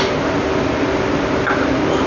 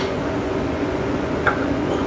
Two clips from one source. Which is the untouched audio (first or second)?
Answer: first